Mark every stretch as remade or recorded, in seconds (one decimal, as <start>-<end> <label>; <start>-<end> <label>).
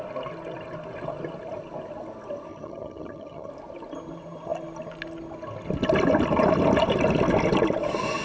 0.0-2.5 recorded; 2.5-3.5 remade; 3.5-8.2 recorded